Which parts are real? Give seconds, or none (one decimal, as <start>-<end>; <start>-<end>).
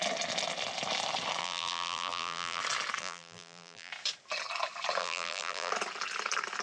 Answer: 0.0-1.4; 2.6-3.0; 3.9-5.0; 5.7-6.6